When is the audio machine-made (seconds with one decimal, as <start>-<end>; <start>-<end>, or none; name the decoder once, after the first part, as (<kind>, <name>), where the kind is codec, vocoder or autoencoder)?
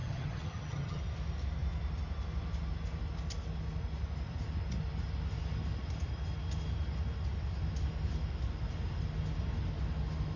0.0-1.0 (vocoder, HiFi-GAN)